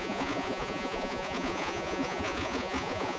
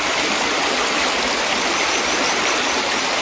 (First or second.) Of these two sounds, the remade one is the first